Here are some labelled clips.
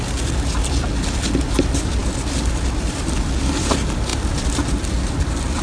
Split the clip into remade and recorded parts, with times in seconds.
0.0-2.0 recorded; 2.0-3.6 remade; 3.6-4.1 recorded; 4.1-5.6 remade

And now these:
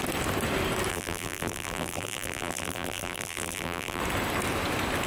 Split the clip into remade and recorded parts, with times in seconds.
0.0-0.9 recorded; 0.9-4.0 remade; 4.0-5.1 recorded

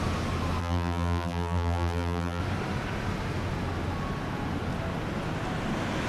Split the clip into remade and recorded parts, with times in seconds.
0.0-0.6 recorded; 0.6-2.4 remade; 2.4-6.1 recorded

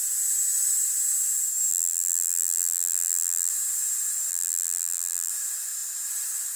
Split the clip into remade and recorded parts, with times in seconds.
0.0-1.7 recorded; 1.7-3.5 remade; 3.5-4.3 recorded; 4.3-5.3 remade; 5.3-6.6 recorded

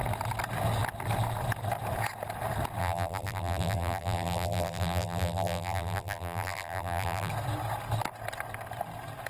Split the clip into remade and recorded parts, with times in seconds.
0.0-2.8 recorded; 2.8-7.3 remade; 7.3-9.3 recorded

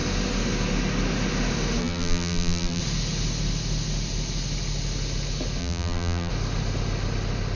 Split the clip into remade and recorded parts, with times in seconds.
0.0-1.8 recorded; 1.8-2.8 remade; 2.8-5.6 recorded; 5.6-6.3 remade; 6.3-7.6 recorded

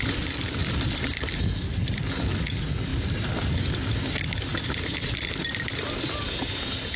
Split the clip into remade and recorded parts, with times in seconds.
0.0-2.9 recorded; 2.9-3.8 remade; 3.8-7.0 recorded